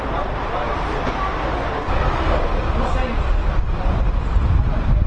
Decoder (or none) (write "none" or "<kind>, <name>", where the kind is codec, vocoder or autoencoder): none